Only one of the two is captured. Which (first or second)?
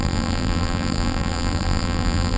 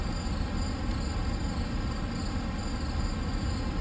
second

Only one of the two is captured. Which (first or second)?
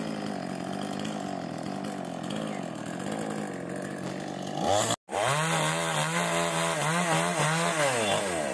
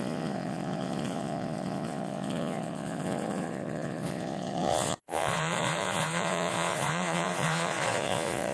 first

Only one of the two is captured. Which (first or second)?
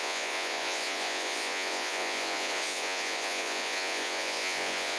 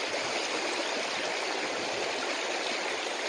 second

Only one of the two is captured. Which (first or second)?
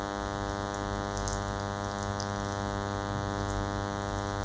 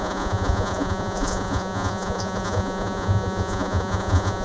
first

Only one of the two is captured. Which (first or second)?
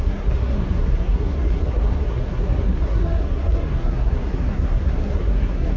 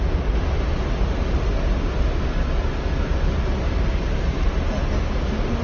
second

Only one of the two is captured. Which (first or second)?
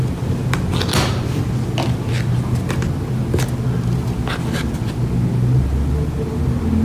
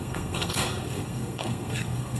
first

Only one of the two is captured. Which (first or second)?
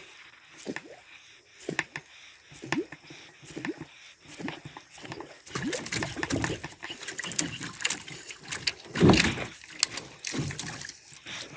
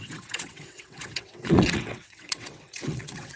first